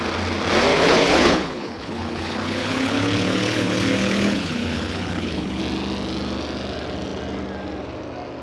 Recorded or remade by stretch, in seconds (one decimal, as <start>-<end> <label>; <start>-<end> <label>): 0.0-0.7 recorded; 0.7-5.6 remade; 5.6-8.4 recorded